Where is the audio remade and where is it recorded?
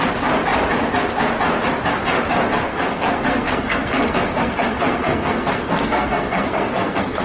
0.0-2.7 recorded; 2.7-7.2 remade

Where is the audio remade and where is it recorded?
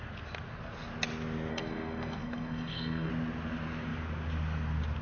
0.0-1.5 recorded; 1.5-3.1 remade; 3.1-5.0 recorded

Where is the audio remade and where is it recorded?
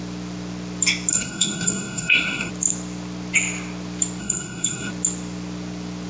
0.0-1.1 recorded; 1.1-2.5 remade; 2.5-4.2 recorded; 4.2-4.9 remade; 4.9-6.1 recorded